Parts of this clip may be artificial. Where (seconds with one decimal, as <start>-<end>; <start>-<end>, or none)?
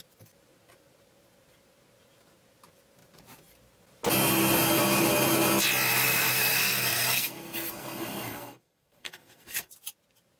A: 5.9-9.7